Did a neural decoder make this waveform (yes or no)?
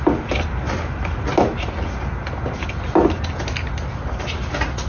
no